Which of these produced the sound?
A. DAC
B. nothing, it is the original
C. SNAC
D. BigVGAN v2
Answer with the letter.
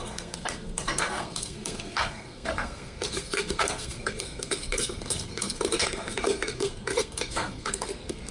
C